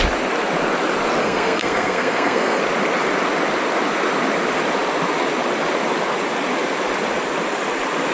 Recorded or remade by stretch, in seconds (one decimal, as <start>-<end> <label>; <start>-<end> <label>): 0.0-1.2 recorded; 1.2-2.6 remade; 2.6-8.1 recorded